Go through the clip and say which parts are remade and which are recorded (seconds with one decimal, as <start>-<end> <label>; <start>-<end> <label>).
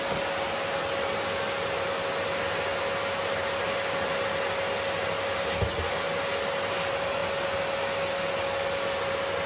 0.0-9.5 recorded